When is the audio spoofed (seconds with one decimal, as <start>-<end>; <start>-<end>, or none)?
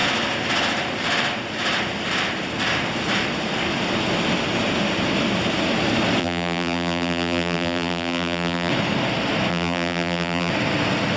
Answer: 6.2-8.7; 9.5-10.5